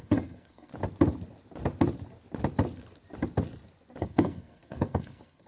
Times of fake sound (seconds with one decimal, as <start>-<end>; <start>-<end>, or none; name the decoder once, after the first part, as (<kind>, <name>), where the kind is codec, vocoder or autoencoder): 0.0-0.7 (codec, SNAC); 4.0-5.5